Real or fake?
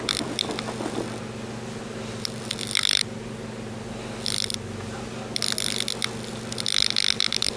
real